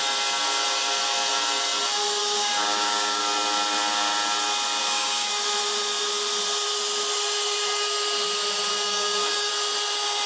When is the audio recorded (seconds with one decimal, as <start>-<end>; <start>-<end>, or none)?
0.0-2.2; 3.2-4.8; 5.3-8.7; 9.5-10.3